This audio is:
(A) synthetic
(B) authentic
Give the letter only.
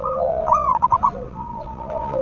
A